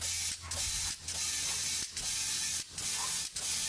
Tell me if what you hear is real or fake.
real